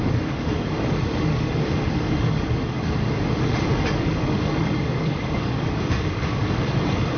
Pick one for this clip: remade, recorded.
remade